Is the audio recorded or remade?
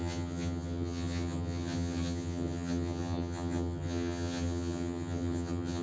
remade